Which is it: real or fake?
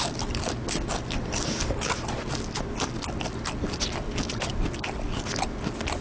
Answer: real